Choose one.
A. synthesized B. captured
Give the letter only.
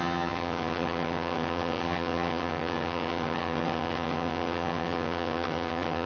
A